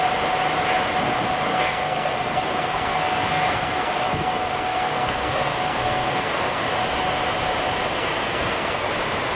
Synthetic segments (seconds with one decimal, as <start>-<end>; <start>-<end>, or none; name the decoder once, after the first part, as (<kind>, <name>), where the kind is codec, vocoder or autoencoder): 1.5-6.7 (codec, SNAC); 7.9-8.9